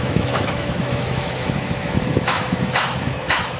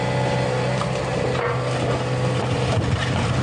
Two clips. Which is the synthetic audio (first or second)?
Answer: first